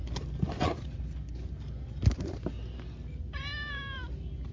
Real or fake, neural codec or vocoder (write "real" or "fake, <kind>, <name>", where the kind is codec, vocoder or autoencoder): real